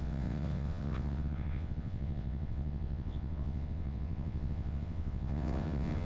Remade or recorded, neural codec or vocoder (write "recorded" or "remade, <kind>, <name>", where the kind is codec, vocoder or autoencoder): remade, vocoder, WaveNeXt